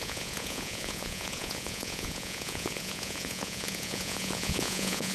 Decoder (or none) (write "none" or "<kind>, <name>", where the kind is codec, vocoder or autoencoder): vocoder, Vocos